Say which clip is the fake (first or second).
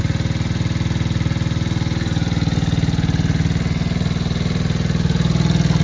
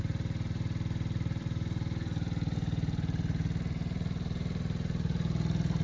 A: second